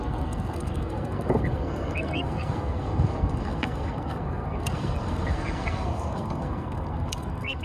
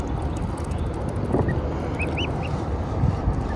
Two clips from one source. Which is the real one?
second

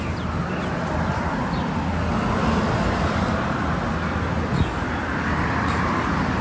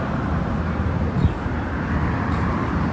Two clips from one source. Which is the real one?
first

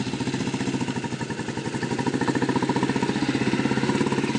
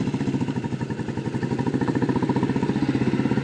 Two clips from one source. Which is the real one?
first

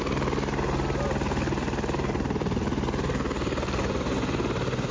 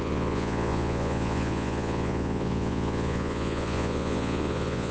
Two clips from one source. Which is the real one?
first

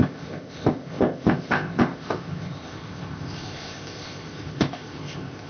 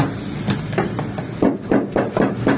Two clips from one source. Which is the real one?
second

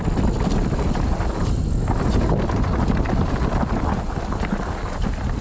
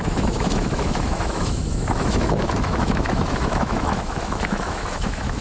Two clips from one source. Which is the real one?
first